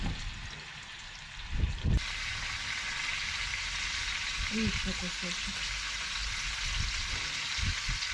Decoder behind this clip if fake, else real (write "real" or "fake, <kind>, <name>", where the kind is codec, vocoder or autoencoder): real